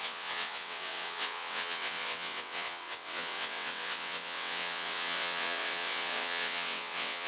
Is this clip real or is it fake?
fake